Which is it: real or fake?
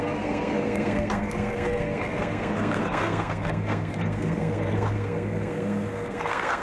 fake